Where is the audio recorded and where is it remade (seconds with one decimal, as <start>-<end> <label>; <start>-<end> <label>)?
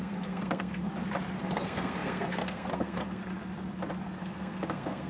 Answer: 0.0-0.9 remade; 0.9-1.4 recorded; 1.4-3.2 remade; 3.2-4.2 recorded; 4.2-5.1 remade